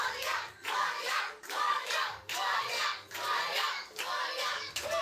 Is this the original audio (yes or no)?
no